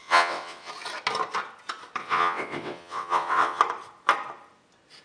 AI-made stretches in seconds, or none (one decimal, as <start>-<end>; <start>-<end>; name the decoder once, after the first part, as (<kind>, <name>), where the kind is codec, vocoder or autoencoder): 0.0-0.7 (vocoder, WaveNeXt); 2.0-3.6